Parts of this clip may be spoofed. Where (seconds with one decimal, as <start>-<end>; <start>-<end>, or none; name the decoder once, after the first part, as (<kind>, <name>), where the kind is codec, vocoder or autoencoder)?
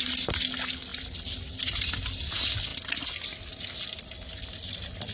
none